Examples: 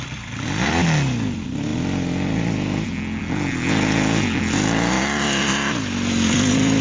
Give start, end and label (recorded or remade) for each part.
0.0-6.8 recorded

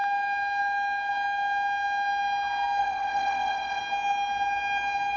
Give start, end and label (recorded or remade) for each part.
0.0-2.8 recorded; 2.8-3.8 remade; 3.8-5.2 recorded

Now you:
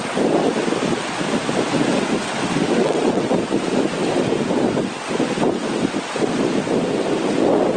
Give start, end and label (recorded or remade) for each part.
0.0-2.8 recorded; 2.8-3.3 remade; 3.3-7.8 recorded

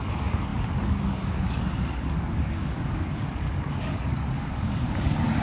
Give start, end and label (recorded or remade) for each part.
0.0-5.4 remade